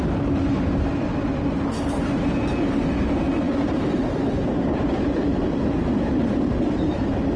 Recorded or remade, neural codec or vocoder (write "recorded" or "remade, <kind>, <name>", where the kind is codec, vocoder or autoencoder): recorded